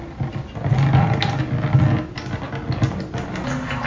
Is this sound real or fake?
real